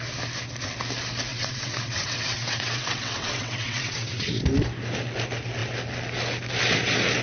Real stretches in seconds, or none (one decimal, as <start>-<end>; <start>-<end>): 0.0-1.3; 4.3-7.2